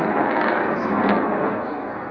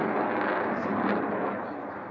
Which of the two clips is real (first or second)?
second